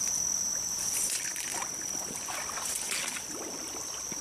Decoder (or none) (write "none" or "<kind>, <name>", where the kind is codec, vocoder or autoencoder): none